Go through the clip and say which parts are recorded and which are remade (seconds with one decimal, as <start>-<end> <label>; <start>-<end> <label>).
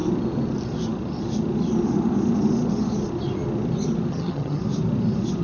0.0-4.1 recorded; 4.1-4.6 remade; 4.6-5.4 recorded